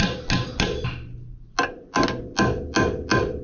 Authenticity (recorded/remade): recorded